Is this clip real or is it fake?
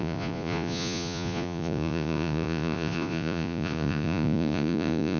fake